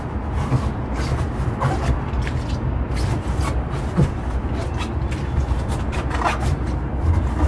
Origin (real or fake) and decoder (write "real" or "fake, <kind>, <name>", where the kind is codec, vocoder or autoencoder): real